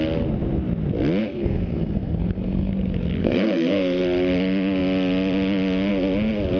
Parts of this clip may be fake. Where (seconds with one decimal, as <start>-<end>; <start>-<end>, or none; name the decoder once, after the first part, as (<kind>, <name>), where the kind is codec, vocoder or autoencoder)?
1.2-2.7 (codec, SNAC); 3.2-4.0